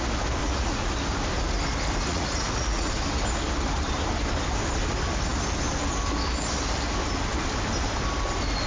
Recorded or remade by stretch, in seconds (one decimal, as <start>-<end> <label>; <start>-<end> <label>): 0.0-0.4 recorded; 0.4-0.9 remade; 0.9-2.1 recorded; 2.1-2.9 remade; 2.9-8.7 recorded